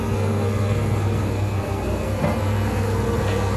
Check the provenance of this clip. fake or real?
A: fake